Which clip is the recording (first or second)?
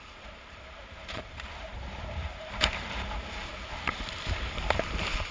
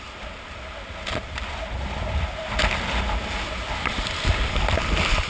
second